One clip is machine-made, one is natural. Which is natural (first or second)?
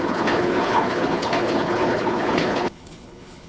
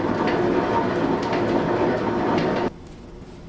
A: second